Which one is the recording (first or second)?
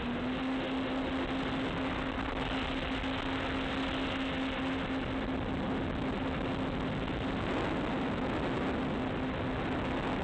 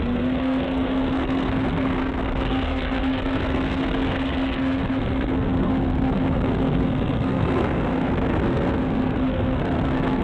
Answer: first